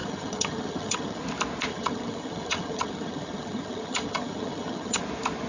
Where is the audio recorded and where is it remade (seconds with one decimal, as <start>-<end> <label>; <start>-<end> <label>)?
0.0-1.2 remade; 1.2-1.7 recorded; 1.7-5.0 remade; 5.0-5.5 recorded